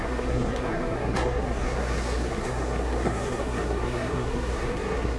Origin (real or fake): fake